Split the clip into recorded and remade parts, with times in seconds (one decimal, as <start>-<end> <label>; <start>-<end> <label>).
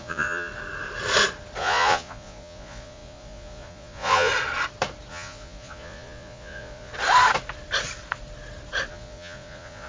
0.0-0.5 remade; 0.5-1.6 recorded; 1.6-4.3 remade; 4.3-5.1 recorded; 5.1-6.9 remade; 6.9-8.9 recorded; 8.9-9.9 remade